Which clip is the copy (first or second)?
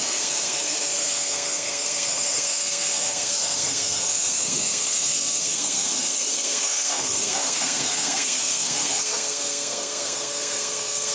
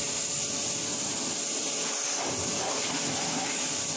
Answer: first